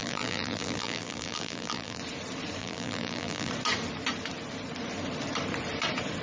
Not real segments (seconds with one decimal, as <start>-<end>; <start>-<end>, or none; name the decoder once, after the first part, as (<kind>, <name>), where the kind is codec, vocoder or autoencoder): 0.0-2.0 (vocoder, BigVGAN v2); 2.6-3.5